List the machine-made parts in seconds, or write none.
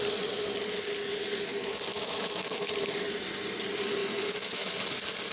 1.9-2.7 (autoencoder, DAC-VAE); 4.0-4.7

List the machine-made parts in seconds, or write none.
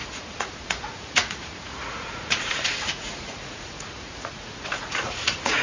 0.0-5.6 (vocoder, Vocos)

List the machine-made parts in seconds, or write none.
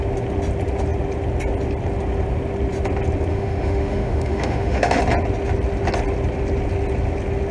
3.3-5.0 (autoencoder, DAC-VAE)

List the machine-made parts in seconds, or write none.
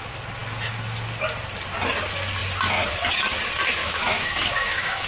3.8-5.1 (autoencoder, DAC-VAE)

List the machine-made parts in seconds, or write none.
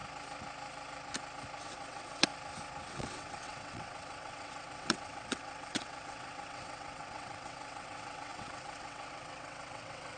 1.6-2.3 (vocoder, WaveNeXt); 2.9-10.2